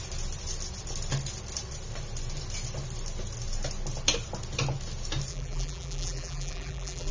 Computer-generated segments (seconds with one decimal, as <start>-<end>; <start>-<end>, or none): 5.3-7.1